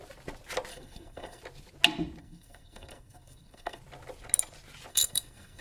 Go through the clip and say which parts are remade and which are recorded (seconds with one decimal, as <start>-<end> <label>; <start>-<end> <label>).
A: 0.0-0.7 recorded; 0.7-1.4 remade; 1.4-2.2 recorded; 2.2-3.8 remade; 3.8-4.9 recorded; 4.9-5.6 remade